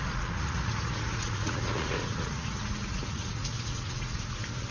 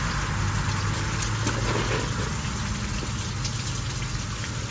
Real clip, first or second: second